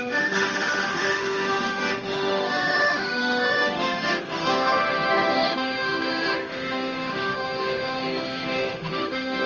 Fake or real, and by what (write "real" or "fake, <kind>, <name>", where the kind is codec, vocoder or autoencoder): fake, autoencoder, DAC-VAE